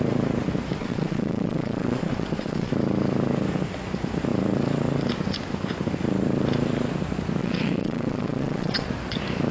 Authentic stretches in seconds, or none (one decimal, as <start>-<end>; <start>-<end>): 0.0-0.8; 2.7-7.4; 8.9-9.5